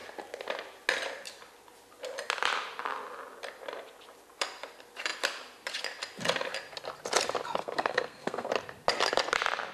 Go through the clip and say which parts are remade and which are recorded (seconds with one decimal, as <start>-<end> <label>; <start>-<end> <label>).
0.0-7.6 recorded; 7.6-8.5 remade; 8.5-9.7 recorded